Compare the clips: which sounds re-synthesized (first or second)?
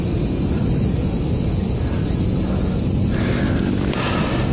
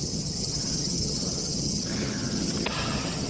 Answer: second